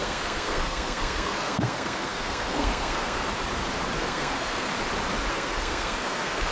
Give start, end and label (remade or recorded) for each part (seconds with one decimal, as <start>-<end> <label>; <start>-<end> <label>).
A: 0.0-3.3 remade; 3.3-4.0 recorded; 4.0-4.7 remade; 4.7-5.3 recorded; 5.3-6.5 remade